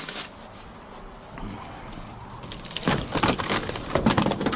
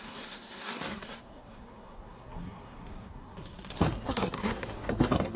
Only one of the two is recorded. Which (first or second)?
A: first